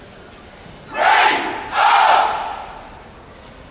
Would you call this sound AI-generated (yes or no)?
no